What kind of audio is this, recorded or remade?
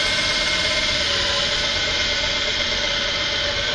recorded